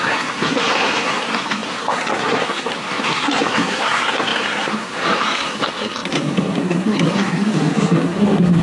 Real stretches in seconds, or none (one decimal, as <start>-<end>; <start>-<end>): none